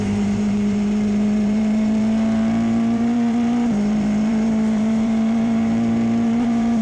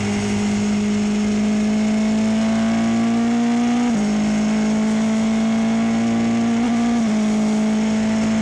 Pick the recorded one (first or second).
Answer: second